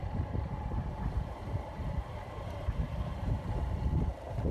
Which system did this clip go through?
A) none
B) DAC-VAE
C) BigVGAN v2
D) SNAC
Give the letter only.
C